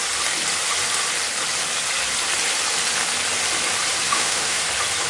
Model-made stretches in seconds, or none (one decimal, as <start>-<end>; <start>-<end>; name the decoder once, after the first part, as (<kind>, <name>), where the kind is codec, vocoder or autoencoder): 4.1-4.6 (autoencoder, DAC-VAE)